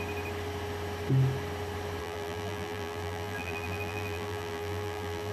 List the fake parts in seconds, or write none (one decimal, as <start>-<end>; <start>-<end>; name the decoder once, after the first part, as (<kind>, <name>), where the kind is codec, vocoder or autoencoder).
2.0-5.3 (vocoder, BigVGAN v2)